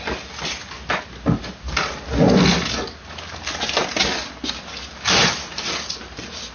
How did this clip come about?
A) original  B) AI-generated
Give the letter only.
A